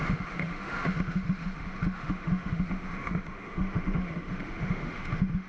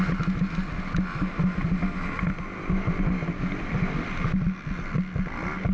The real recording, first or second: second